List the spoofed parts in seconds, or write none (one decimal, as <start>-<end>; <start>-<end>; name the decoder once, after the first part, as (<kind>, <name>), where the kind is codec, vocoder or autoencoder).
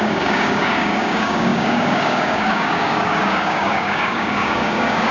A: 0.0-5.1 (codec, DAC)